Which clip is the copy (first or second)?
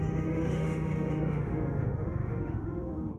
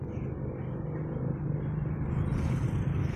first